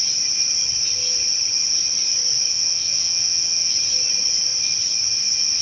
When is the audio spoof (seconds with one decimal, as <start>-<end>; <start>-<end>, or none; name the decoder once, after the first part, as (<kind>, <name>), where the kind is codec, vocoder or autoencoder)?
2.5-3.7 (vocoder, WaveNeXt)